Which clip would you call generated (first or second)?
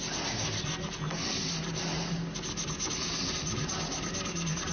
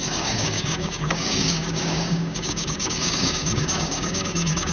second